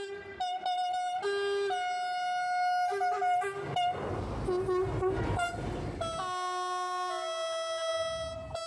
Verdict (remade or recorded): recorded